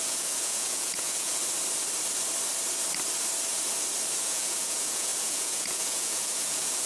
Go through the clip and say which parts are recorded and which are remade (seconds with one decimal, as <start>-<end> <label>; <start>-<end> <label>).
0.0-1.4 remade; 1.4-4.2 recorded; 4.2-6.9 remade